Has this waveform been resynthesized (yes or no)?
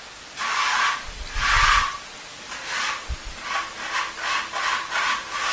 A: no